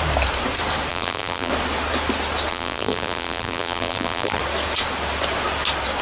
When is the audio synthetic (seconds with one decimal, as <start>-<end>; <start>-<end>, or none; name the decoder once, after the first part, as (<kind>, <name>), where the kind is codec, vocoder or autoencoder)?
0.9-1.5 (vocoder, BigVGAN v2); 2.5-4.4